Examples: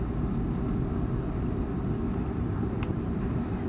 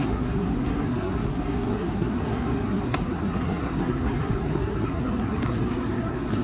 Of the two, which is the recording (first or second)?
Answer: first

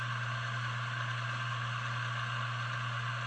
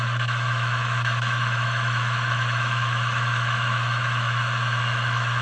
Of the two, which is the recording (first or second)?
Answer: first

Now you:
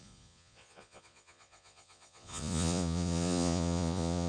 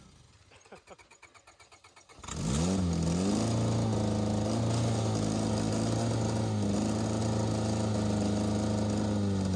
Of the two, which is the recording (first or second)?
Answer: second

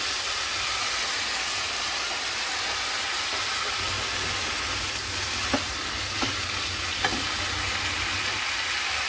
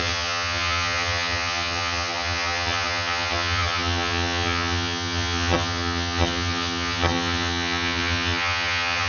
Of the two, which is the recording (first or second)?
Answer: first